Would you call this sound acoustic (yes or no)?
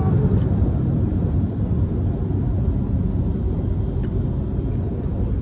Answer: yes